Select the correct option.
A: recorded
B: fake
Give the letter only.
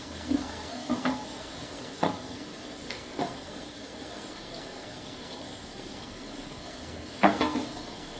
B